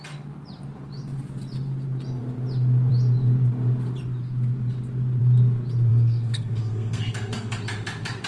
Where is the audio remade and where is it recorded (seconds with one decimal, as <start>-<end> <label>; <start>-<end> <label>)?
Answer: 0.0-5.9 recorded; 5.9-7.6 remade; 7.6-8.3 recorded